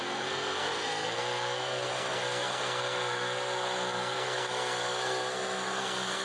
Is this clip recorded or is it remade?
remade